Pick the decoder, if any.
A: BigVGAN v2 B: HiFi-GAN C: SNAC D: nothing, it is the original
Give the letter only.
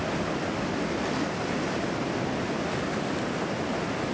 D